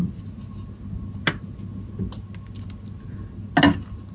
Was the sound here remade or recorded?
recorded